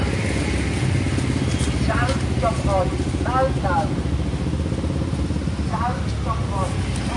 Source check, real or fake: real